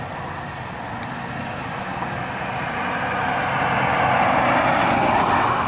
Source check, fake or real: real